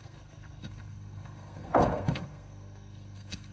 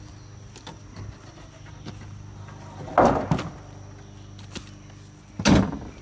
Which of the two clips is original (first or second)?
second